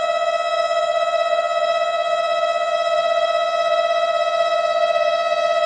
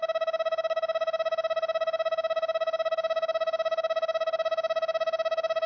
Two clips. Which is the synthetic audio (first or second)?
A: first